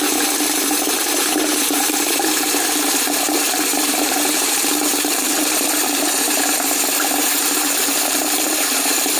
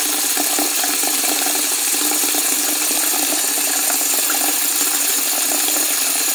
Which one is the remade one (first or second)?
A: first